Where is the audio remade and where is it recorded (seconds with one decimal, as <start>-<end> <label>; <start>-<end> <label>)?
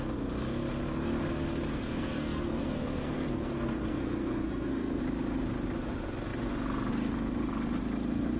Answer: 0.0-1.7 recorded; 1.7-5.0 remade; 5.0-8.4 recorded